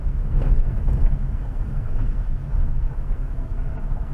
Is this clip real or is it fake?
fake